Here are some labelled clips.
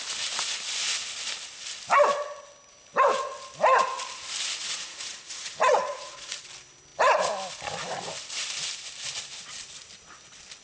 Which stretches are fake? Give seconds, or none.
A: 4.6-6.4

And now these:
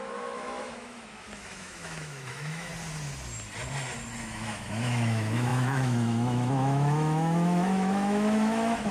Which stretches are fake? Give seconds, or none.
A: 0.0-2.7; 4.2-8.9